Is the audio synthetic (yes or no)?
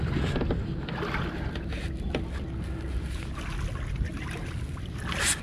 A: no